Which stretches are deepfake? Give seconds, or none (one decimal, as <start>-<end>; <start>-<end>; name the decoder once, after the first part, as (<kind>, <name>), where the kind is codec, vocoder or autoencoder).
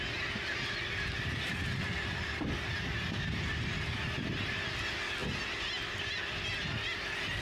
none